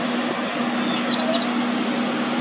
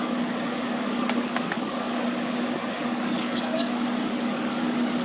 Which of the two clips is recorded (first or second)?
first